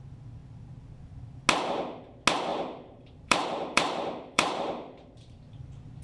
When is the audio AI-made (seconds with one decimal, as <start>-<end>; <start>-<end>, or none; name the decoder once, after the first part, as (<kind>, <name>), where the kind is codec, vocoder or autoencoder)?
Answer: 2.5-5.5 (vocoder, BigVGAN v2)